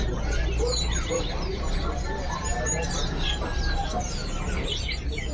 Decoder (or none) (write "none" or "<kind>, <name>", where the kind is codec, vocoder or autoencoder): none